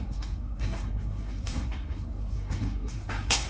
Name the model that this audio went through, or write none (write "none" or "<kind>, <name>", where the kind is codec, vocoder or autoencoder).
codec, SNAC